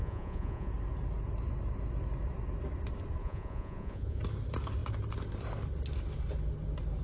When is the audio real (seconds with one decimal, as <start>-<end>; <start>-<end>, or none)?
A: 0.7-3.2; 4.2-7.0